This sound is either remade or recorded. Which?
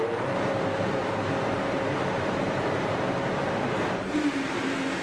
remade